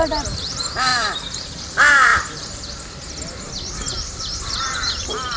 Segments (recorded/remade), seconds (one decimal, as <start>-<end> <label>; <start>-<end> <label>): 0.0-5.4 remade